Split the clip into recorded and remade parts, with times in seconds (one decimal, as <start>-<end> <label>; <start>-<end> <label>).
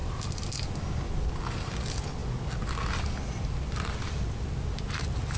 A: 0.0-5.4 recorded